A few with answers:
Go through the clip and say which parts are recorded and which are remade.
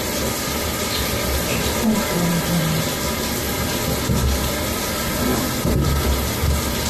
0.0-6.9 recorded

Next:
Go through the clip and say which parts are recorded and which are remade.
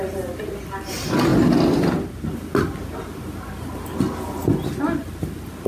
0.0-5.7 recorded